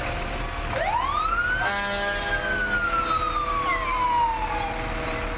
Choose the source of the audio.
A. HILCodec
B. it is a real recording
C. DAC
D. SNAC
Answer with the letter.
B